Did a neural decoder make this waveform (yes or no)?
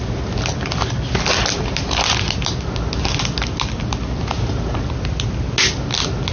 no